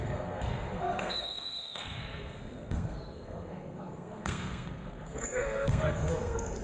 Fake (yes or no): yes